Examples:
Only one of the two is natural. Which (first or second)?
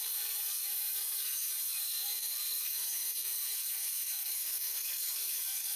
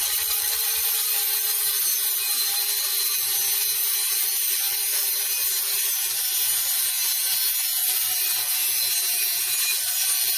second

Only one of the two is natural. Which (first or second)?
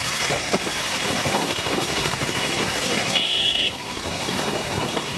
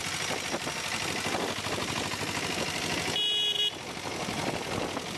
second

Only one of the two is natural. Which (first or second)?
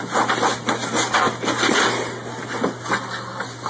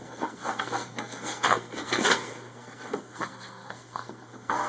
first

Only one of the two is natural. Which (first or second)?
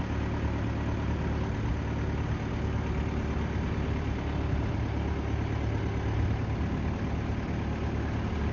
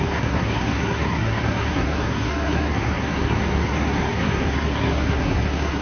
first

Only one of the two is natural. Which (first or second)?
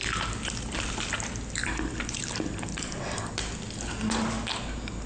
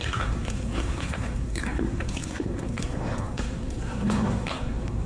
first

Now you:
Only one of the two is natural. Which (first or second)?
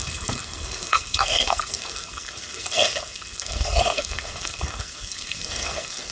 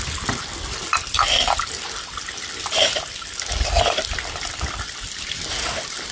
second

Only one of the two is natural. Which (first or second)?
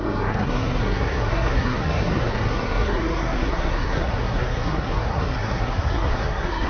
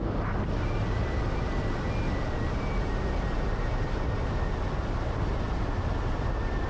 second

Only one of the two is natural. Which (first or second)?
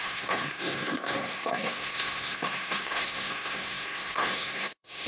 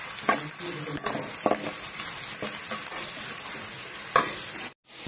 second